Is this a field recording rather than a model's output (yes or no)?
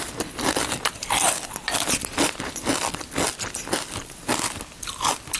yes